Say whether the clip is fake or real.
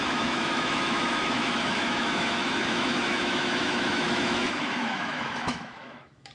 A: fake